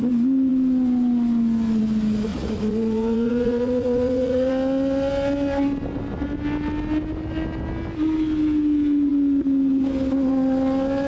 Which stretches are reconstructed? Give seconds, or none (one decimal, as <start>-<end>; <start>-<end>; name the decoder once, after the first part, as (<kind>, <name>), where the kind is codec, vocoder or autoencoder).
2.3-4.5 (vocoder, Vocos)